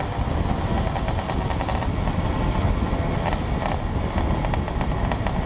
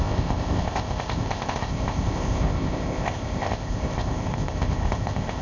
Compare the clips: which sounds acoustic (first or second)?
first